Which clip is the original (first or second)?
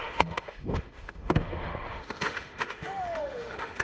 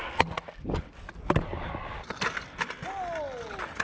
second